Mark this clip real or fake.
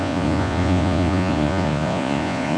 fake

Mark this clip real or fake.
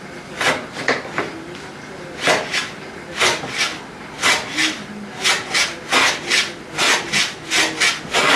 real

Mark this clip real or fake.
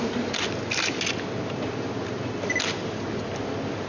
real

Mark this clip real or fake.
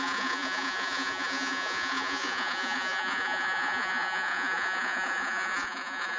fake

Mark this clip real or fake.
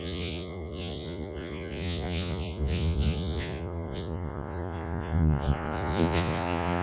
fake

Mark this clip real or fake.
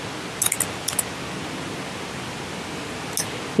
real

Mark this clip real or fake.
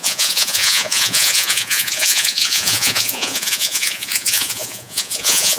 fake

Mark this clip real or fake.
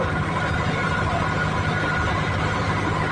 real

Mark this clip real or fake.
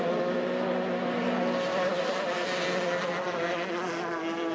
real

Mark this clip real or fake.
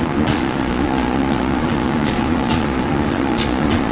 fake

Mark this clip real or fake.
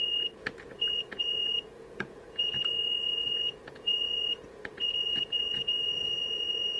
fake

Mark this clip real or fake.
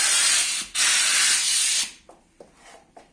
real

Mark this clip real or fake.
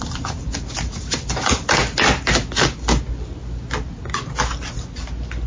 real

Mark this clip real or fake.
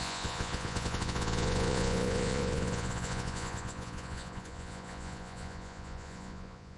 fake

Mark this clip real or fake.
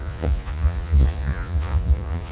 fake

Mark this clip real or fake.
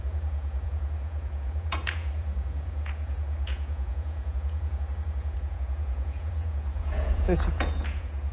fake